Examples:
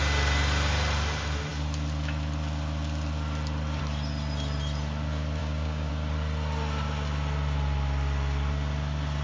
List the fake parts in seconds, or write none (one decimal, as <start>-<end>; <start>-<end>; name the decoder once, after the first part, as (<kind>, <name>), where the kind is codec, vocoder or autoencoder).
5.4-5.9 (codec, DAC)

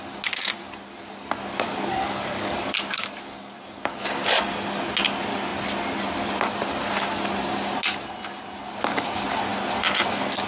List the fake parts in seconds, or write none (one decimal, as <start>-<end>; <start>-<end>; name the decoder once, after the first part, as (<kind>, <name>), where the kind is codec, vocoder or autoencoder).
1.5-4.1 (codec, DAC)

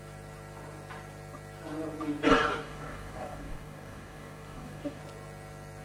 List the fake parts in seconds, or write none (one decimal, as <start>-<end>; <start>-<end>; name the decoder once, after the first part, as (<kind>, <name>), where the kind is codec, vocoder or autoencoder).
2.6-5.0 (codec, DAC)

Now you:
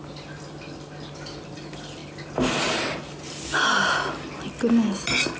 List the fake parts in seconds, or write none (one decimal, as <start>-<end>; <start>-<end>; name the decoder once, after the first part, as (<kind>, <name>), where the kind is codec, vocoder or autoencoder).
none